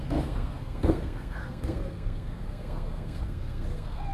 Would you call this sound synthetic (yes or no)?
yes